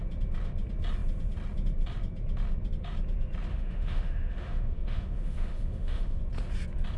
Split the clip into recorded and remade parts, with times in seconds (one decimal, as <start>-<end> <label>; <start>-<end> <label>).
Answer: 0.0-3.5 recorded; 3.5-6.2 remade; 6.2-7.0 recorded